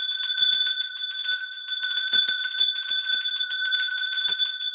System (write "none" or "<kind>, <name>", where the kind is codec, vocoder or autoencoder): vocoder, Vocos